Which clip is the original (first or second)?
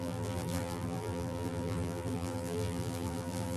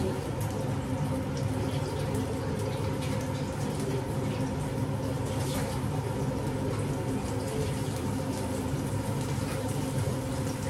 second